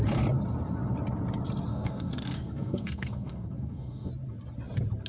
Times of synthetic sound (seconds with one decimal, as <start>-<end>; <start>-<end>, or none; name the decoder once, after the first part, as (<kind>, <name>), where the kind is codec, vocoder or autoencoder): 1.7-4.1 (codec, SNAC)

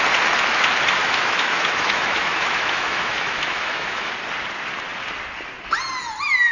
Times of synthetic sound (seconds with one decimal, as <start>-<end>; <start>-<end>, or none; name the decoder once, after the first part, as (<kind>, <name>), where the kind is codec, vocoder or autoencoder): 1.0-4.1 (autoencoder, DAC-VAE)

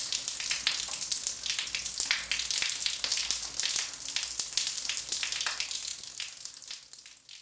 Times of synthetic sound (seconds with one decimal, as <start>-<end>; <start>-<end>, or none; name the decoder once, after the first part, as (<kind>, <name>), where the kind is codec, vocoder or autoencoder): none